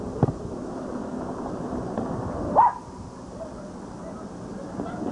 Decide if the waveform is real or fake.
real